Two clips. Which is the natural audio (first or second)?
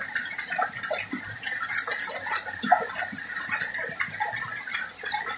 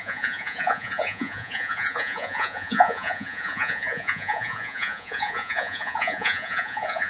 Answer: first